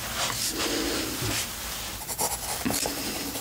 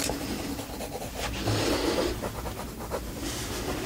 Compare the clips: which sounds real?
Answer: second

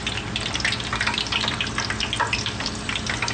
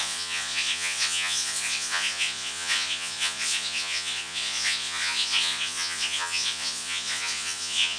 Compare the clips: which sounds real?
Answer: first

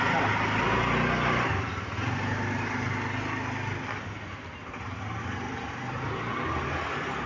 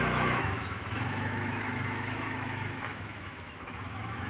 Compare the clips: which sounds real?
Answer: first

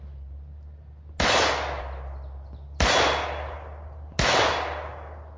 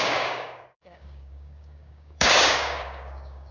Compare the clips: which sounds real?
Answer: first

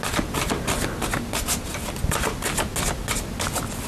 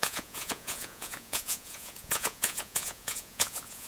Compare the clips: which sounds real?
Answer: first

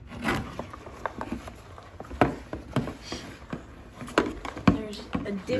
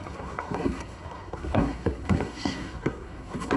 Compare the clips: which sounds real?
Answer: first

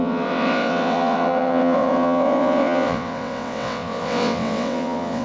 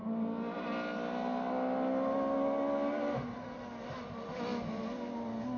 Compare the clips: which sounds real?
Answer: second